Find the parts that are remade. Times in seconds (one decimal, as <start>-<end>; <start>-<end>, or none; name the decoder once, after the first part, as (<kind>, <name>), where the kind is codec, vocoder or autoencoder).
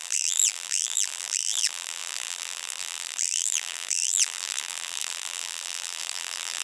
0.0-6.6 (vocoder, BigVGAN v2)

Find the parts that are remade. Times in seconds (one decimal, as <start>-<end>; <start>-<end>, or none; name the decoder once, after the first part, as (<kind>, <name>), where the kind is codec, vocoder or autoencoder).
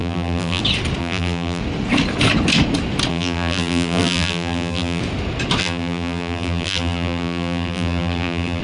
0.0-0.6 (vocoder, BigVGAN v2); 1.0-1.6; 3.1-5.0; 5.6-8.6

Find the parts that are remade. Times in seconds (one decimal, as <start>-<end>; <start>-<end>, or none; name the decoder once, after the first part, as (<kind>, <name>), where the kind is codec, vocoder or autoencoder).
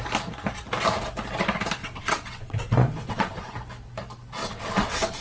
1.8-3.5 (vocoder, WaveNeXt); 4.4-5.2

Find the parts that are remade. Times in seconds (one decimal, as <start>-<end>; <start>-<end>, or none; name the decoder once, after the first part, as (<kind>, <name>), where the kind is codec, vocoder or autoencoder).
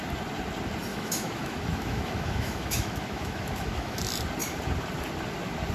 0.9-4.0 (autoencoder, DAC-VAE)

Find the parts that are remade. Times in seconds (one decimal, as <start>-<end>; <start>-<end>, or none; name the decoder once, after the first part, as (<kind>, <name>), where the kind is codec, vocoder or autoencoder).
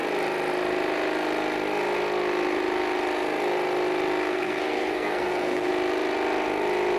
4.3-5.7 (codec, SNAC)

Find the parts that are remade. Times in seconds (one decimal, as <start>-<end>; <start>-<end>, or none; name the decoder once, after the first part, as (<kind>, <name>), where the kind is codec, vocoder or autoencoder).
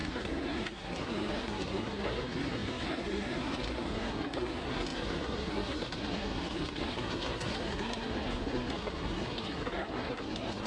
0.0-10.7 (codec, SNAC)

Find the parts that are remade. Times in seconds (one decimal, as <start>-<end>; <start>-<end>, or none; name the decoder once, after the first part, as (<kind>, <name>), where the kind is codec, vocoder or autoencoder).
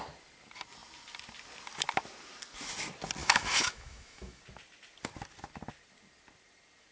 3.2-4.4 (autoencoder, DAC-VAE)